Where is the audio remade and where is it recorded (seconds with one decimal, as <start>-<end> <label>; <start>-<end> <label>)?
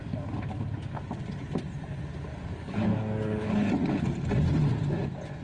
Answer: 0.0-2.3 recorded; 2.3-3.7 remade; 3.7-5.4 recorded